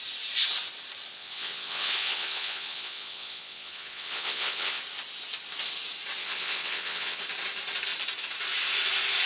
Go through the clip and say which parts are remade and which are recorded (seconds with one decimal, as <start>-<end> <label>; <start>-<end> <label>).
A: 0.0-1.1 recorded; 1.1-4.8 remade; 4.8-6.2 recorded; 6.2-7.2 remade; 7.2-9.3 recorded